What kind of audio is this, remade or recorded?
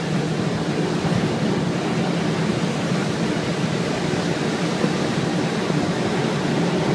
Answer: recorded